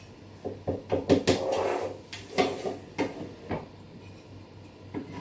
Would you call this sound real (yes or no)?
yes